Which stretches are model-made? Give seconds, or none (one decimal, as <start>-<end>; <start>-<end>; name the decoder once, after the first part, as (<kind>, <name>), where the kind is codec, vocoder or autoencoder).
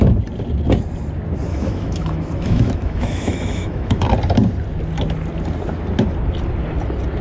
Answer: 1.5-4.0 (autoencoder, DAC-VAE)